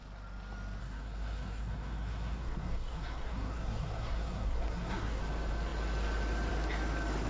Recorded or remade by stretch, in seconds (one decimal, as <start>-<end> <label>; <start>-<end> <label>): 0.0-0.8 recorded; 0.8-5.2 remade; 5.2-7.3 recorded